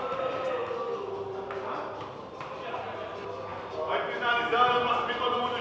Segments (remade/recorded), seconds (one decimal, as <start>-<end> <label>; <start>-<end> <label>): 0.0-5.6 recorded